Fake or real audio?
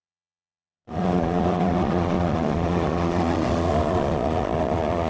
fake